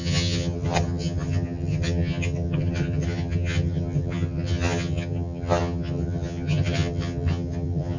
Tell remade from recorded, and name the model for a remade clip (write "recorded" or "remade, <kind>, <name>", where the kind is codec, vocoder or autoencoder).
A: remade, vocoder, HiFi-GAN